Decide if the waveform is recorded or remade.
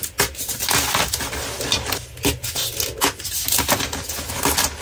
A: recorded